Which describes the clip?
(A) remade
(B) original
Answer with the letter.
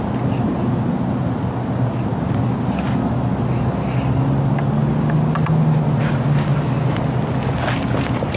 B